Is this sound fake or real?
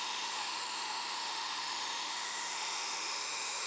fake